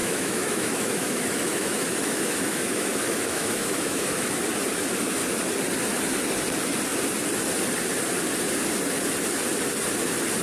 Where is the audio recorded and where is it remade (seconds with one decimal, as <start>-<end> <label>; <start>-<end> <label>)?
0.0-4.3 remade; 4.3-10.4 recorded